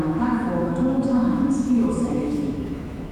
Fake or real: fake